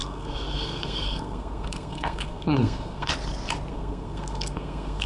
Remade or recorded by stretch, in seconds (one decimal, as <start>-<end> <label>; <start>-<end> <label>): 0.0-3.1 remade; 3.1-3.7 recorded; 3.7-5.1 remade